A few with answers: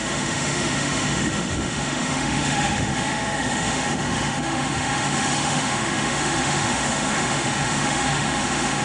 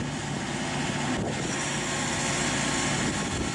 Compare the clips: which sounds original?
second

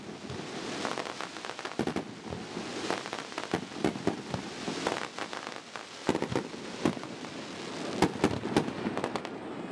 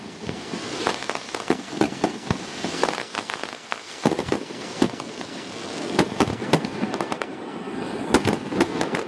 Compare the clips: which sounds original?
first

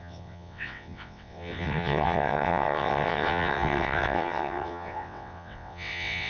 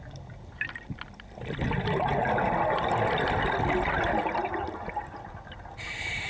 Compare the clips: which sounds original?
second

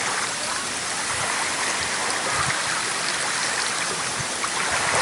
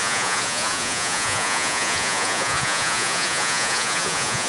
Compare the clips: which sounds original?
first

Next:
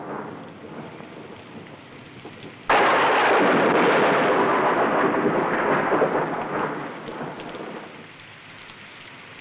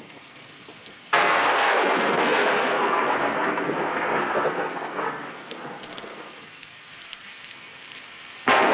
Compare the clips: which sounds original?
first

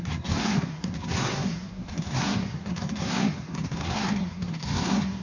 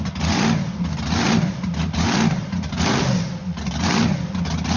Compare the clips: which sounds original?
second